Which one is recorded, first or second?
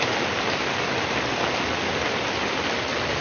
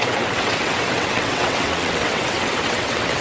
first